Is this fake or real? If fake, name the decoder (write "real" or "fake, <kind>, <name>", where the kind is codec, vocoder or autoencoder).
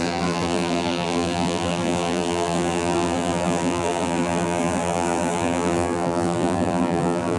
fake, vocoder, BigVGAN v2